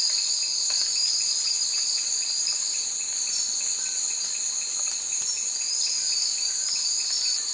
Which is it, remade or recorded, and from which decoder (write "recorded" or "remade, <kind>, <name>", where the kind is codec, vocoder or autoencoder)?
recorded